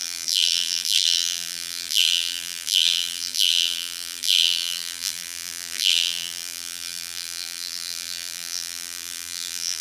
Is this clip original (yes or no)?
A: no